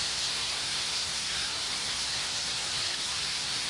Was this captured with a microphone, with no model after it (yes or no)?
no